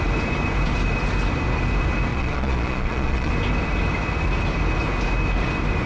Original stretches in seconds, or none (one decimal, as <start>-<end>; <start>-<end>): 0.0-2.1; 3.3-5.9